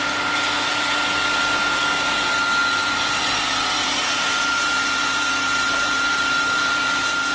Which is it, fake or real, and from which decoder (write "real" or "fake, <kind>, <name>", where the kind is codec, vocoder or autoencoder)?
real